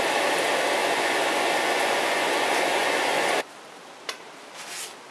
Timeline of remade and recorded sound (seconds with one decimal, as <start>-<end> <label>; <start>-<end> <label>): 0.0-0.8 recorded; 0.8-3.5 remade; 3.5-5.1 recorded